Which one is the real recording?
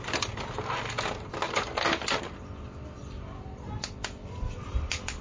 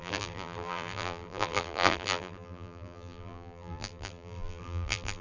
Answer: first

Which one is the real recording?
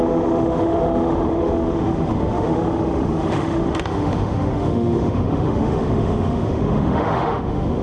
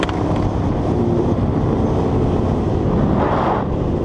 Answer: second